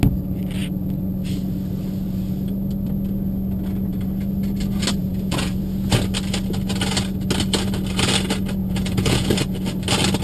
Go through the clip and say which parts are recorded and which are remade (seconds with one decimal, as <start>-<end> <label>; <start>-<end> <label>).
0.0-5.0 recorded; 5.0-5.6 remade; 5.6-8.6 recorded; 8.6-9.3 remade; 9.3-10.2 recorded

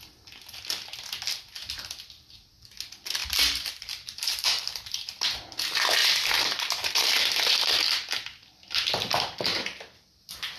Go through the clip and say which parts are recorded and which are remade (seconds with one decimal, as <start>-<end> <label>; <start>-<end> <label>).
0.0-3.2 recorded; 3.2-5.1 remade; 5.1-6.0 recorded; 6.0-7.2 remade; 7.2-9.5 recorded; 9.5-10.2 remade; 10.2-10.6 recorded

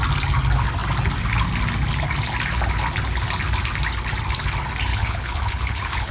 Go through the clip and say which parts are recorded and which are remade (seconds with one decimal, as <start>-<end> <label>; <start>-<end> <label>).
0.0-4.9 recorded; 4.9-6.1 remade

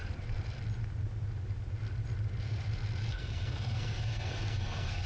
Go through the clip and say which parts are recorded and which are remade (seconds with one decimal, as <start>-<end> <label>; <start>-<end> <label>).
0.0-3.1 recorded; 3.1-5.1 remade

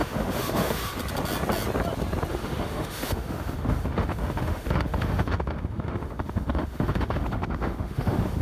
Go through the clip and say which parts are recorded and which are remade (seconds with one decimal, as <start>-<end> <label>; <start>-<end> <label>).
0.0-0.9 remade; 0.9-2.3 recorded; 2.3-8.4 remade